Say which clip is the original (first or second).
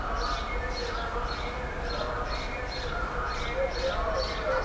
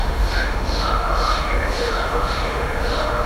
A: first